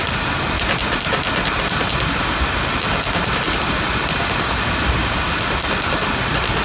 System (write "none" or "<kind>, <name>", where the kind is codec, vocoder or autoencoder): none